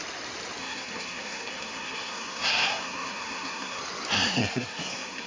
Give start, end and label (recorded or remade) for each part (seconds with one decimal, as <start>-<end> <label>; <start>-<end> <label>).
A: 0.0-0.6 recorded; 0.6-3.8 remade; 3.8-4.4 recorded; 4.4-5.3 remade